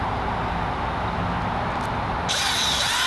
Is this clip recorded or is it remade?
recorded